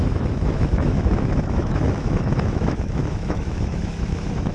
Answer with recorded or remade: remade